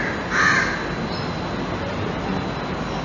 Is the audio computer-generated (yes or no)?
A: no